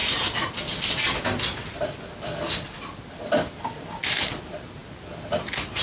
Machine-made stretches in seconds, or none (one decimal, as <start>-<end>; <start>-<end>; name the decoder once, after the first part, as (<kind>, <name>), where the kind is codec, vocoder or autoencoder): none

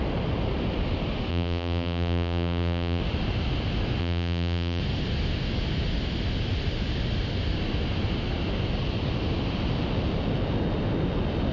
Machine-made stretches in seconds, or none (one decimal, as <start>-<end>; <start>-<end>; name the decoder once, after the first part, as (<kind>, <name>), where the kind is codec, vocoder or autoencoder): 1.3-3.0 (vocoder, BigVGAN v2); 4.0-4.8

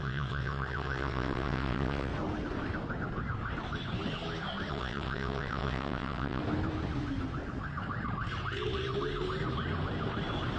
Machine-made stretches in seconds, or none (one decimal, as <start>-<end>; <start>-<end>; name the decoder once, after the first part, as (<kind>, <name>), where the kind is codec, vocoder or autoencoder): 0.0-2.1 (vocoder, WaveNeXt); 4.7-6.4

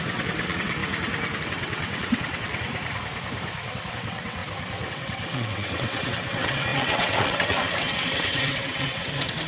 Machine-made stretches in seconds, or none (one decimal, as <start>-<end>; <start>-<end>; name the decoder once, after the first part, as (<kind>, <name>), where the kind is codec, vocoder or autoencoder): 0.0-0.8 (vocoder, WaveNeXt); 1.4-2.7; 3.9-4.4; 4.9-9.5

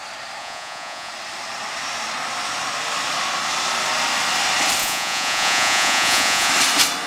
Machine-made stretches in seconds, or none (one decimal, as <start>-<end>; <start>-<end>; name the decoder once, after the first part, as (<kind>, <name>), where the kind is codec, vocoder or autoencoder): 0.4-1.1 (vocoder, Vocos); 4.8-6.5

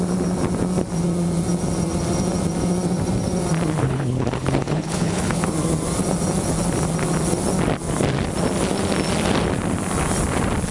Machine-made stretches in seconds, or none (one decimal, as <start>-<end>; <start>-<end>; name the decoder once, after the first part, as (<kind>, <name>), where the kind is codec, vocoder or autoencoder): 3.8-5.5 (codec, HILCodec)